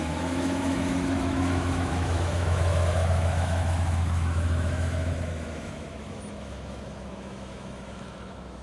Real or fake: fake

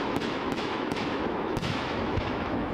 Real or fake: fake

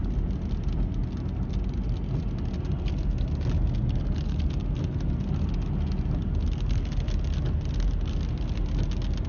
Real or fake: real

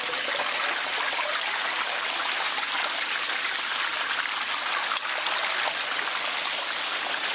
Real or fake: real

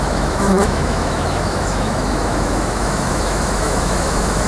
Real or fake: fake